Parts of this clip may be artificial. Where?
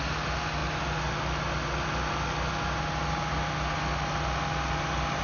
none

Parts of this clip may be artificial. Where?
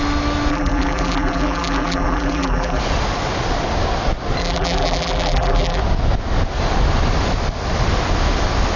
0.5-2.8; 4.4-5.8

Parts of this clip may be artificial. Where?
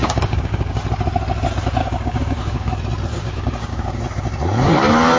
0.0-0.8; 1.8-2.7; 3.1-4.0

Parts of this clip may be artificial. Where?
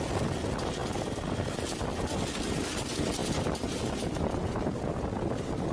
none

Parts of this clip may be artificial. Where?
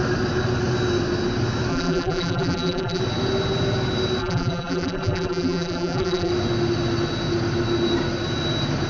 1.7-3.0; 4.2-6.3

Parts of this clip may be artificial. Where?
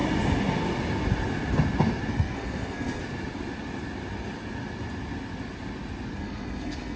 2.1-3.0; 6.1-7.0